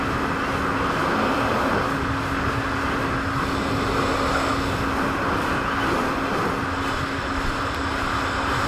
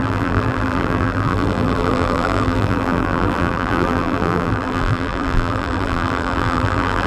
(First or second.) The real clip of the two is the first